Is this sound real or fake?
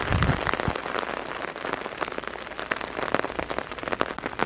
real